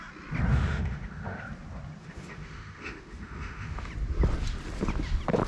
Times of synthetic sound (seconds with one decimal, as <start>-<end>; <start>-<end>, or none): 0.5-1.4; 2.0-3.9